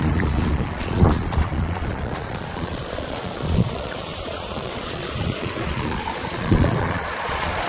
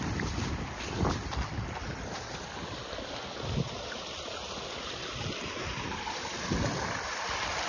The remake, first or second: first